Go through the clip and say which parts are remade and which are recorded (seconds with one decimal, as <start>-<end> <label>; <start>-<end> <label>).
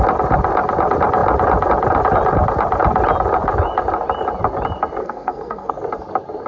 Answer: 0.0-5.0 recorded; 5.0-5.7 remade; 5.7-6.5 recorded